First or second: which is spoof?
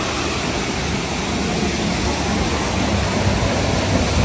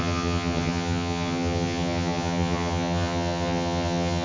second